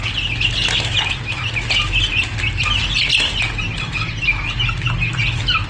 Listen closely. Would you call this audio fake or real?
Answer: real